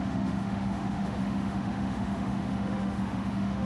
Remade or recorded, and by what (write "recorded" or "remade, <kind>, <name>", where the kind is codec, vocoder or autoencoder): remade, autoencoder, DAC-VAE